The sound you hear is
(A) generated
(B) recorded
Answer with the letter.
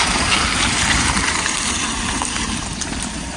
B